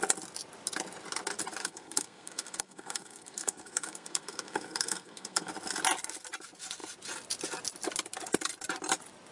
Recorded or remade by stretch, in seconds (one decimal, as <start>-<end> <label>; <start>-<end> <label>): 0.0-1.6 recorded; 1.6-5.5 remade; 5.5-9.3 recorded